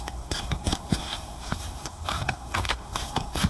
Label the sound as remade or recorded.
remade